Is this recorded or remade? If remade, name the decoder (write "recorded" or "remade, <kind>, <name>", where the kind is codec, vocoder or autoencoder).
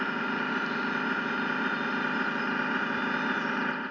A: recorded